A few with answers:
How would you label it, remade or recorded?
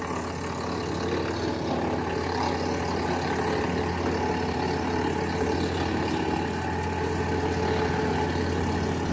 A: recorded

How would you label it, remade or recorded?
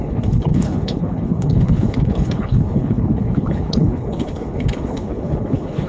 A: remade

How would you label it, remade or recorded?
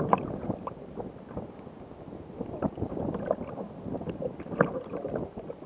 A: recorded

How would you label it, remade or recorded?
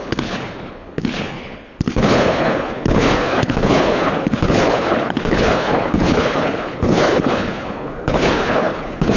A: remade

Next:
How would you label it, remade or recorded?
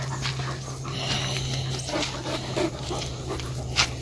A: recorded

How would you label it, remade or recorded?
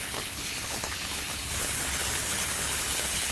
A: remade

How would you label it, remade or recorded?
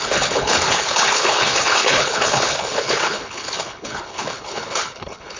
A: remade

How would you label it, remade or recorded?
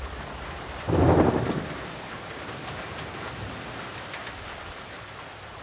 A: recorded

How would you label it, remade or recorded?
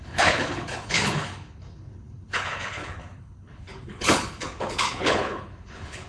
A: remade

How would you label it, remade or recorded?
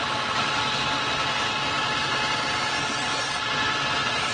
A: recorded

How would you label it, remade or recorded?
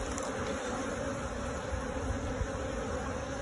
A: recorded